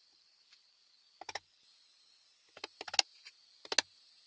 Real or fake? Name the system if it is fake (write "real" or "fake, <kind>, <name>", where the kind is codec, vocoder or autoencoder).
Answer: real